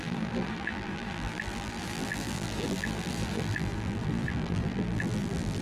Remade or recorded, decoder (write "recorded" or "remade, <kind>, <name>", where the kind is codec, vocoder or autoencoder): remade, vocoder, BigVGAN v2